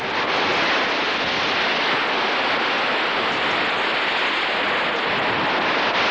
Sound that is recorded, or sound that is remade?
recorded